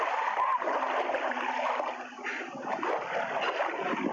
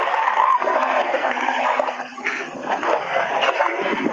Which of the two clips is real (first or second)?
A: first